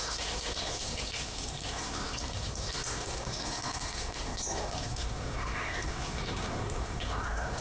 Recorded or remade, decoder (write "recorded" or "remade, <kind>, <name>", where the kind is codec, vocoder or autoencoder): remade, codec, SNAC